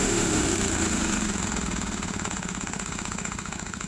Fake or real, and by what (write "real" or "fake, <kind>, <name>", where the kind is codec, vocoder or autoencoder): fake, autoencoder, DAC-VAE